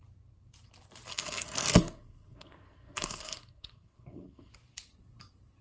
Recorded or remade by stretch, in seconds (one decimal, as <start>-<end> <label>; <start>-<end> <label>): 0.0-1.1 recorded; 1.1-4.5 remade; 4.5-5.6 recorded